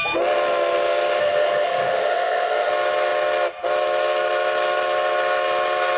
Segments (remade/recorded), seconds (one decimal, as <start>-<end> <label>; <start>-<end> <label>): 0.0-1.2 recorded; 1.2-2.7 remade; 2.7-6.0 recorded